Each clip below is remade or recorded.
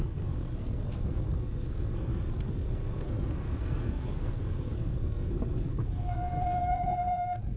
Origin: remade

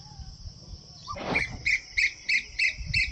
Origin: recorded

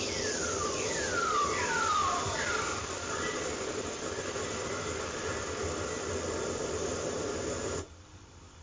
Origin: recorded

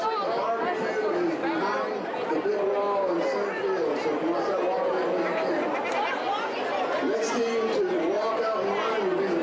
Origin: recorded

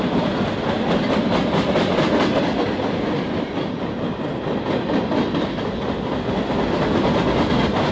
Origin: recorded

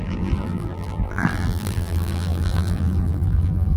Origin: remade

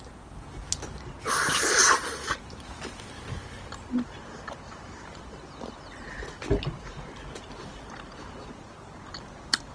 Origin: recorded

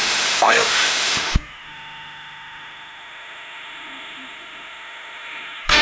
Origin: remade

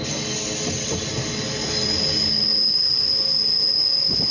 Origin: recorded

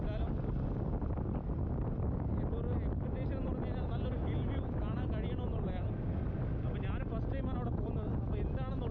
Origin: recorded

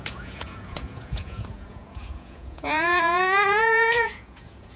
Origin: remade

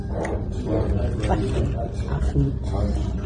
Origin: recorded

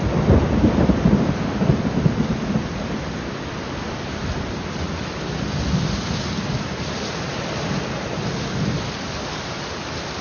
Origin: recorded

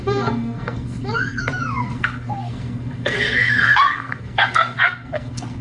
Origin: remade